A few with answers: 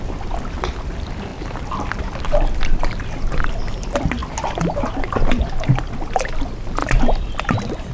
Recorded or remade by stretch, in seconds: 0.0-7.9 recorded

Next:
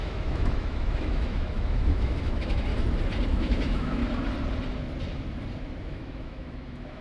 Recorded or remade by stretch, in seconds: 0.0-2.7 remade; 2.7-3.3 recorded; 3.3-4.0 remade; 4.0-5.8 recorded; 5.8-7.0 remade

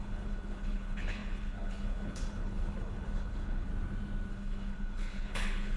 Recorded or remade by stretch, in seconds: 0.0-3.7 remade; 3.7-4.3 recorded; 4.3-5.8 remade

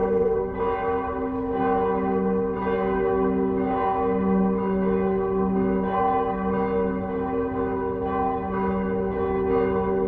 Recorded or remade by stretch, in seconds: 0.0-0.6 remade; 0.6-10.1 recorded

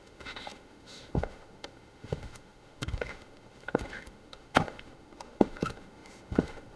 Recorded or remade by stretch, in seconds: 0.0-6.8 remade